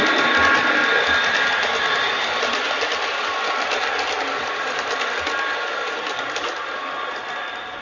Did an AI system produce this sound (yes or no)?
no